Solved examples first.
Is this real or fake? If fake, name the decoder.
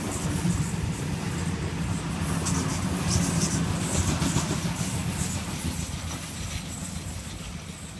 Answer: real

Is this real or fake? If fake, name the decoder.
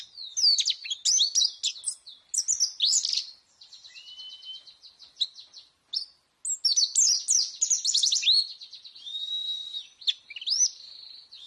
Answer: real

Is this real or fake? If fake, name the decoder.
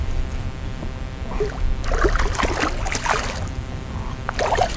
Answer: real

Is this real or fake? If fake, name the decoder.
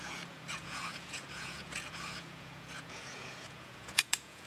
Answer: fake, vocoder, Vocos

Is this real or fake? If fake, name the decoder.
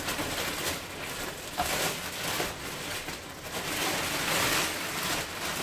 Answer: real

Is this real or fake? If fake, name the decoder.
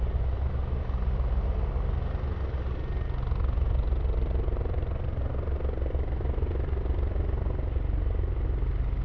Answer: real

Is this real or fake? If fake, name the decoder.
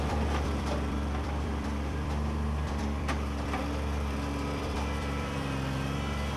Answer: fake, vocoder, BigVGAN v2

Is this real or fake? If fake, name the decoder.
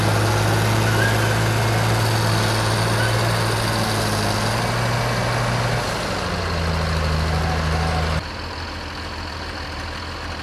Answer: real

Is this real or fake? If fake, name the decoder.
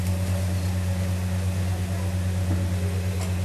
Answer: real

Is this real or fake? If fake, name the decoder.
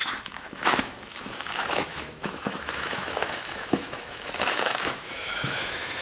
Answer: fake, autoencoder, DAC-VAE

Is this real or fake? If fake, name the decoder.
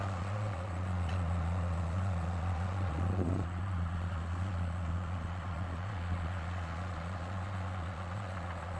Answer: fake, vocoder, Vocos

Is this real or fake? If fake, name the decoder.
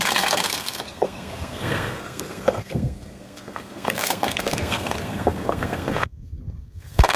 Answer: fake, codec, SNAC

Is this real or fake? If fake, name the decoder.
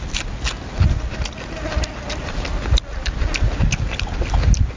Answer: real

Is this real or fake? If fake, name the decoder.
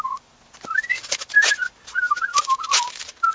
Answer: real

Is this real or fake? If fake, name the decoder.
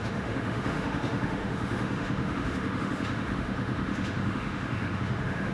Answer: fake, autoencoder, DAC-VAE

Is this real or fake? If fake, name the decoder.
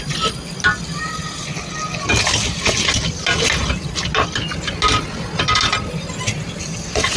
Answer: real